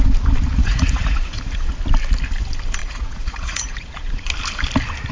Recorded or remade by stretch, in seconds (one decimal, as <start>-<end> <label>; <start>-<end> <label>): 0.0-0.5 recorded; 0.5-1.7 remade; 1.7-2.8 recorded; 2.8-4.3 remade; 4.3-5.1 recorded